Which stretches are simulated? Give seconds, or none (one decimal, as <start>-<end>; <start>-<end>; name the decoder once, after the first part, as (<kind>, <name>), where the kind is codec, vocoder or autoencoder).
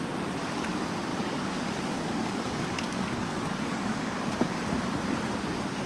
1.1-4.6 (codec, DAC)